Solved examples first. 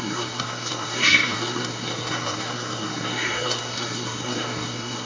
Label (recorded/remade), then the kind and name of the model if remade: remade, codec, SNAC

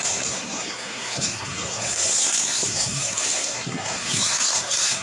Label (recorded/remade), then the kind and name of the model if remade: remade, codec, SNAC